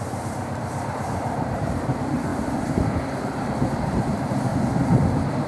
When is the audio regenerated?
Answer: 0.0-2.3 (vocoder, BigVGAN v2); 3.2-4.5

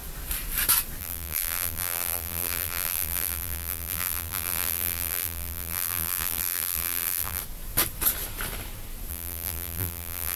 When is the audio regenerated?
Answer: 1.0-7.4 (vocoder, BigVGAN v2); 9.1-10.4

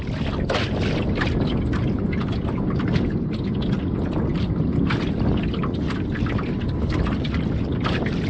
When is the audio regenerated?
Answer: none

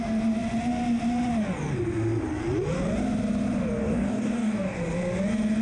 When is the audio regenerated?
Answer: 3.8-4.8 (codec, DAC)

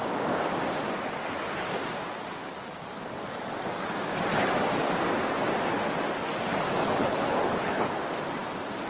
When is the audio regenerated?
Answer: 6.8-7.8 (codec, HILCodec)

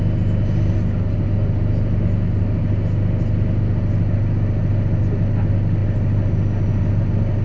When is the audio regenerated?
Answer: 5.8-7.0 (vocoder, BigVGAN v2)